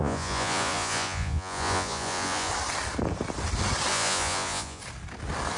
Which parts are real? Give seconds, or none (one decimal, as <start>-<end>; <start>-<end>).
2.5-3.9; 4.8-5.6